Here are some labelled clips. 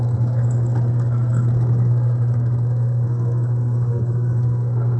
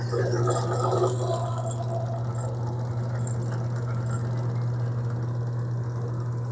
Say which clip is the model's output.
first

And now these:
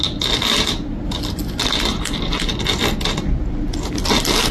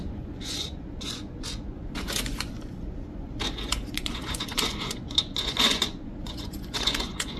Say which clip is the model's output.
second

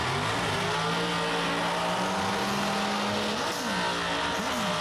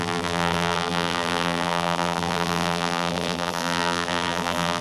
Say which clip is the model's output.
second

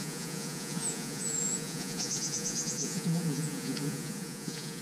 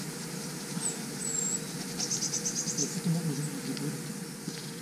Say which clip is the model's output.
first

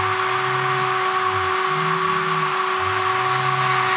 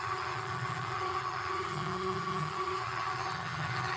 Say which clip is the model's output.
second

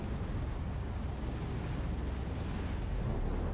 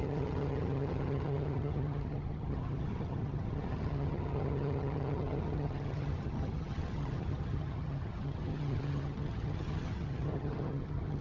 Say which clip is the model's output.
second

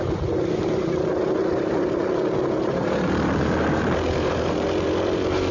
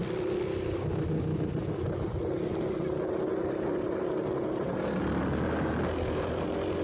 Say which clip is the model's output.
first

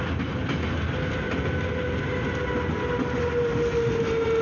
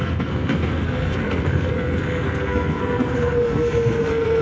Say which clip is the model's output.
second